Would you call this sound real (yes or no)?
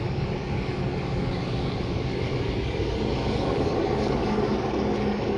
no